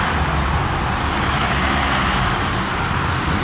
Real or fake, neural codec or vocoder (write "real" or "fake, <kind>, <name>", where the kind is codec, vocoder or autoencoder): real